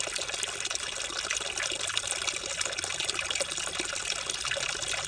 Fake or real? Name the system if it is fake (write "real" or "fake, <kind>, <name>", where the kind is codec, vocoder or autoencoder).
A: real